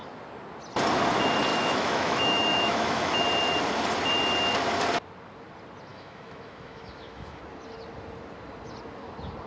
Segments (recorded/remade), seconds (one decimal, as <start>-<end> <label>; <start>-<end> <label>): 0.0-1.5 recorded; 1.5-3.2 remade; 3.2-5.9 recorded; 5.9-7.4 remade; 7.4-9.5 recorded